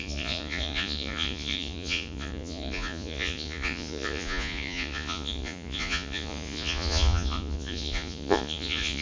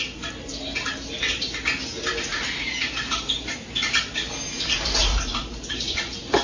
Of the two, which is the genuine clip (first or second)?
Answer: second